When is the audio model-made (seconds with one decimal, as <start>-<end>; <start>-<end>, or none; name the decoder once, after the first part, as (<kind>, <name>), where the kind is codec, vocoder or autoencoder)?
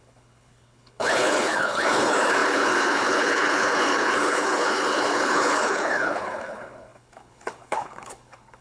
0.0-8.6 (codec, HILCodec)